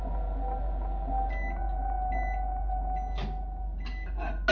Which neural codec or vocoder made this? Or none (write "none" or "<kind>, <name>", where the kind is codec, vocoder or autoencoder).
none